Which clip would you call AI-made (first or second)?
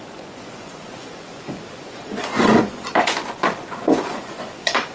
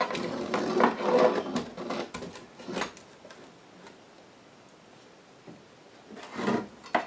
first